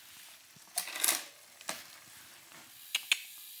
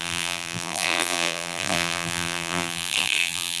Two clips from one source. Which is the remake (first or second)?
second